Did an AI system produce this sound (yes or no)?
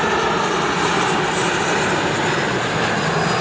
no